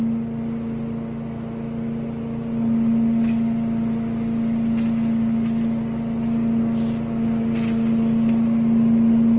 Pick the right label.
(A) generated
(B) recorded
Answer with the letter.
B